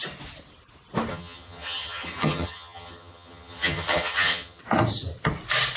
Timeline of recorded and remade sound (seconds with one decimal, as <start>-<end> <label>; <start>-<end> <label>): 0.0-1.1 recorded; 1.1-4.6 remade; 4.6-5.8 recorded

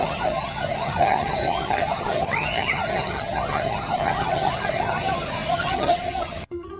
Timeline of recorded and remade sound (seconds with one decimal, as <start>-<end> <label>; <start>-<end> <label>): 0.0-6.8 remade

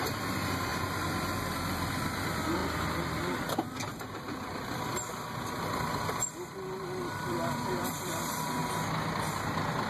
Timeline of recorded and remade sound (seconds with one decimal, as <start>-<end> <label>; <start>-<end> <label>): 0.0-8.6 remade; 8.6-9.3 recorded; 9.3-9.9 remade

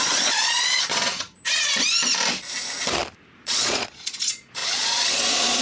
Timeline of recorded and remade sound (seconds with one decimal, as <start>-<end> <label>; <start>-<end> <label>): 0.0-1.2 remade; 1.2-3.4 recorded; 3.4-5.6 remade

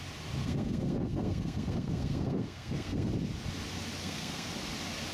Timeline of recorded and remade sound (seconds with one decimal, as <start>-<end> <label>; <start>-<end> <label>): 0.0-0.4 recorded; 0.4-3.1 remade; 3.1-4.0 recorded; 4.0-4.5 remade; 4.5-5.1 recorded

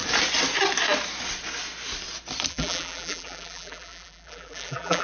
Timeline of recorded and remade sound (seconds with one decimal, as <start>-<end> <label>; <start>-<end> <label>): 0.0-2.5 recorded; 2.5-5.0 remade

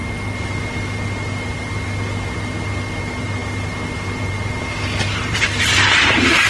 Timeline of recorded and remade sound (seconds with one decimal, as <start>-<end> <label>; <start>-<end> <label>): 0.0-6.5 remade

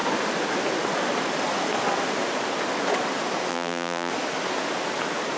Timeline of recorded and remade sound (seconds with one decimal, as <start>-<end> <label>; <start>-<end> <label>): 0.0-3.5 recorded; 3.5-4.1 remade; 4.1-5.4 recorded